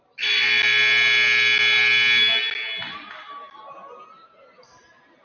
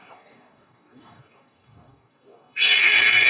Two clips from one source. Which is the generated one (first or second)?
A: second